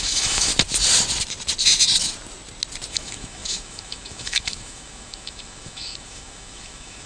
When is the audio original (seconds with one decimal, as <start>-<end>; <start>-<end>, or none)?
0.5-2.9